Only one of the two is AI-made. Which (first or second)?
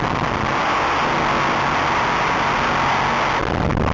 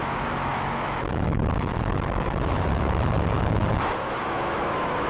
second